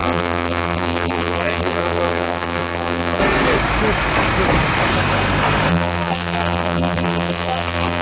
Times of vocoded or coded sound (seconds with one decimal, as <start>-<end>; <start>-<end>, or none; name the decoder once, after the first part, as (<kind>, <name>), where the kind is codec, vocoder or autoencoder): 0.0-3.2 (vocoder, BigVGAN v2); 5.7-8.0